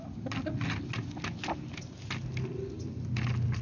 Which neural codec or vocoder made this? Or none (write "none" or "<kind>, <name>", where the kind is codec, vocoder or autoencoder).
none